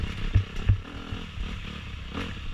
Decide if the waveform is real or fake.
real